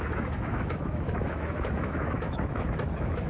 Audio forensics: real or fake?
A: fake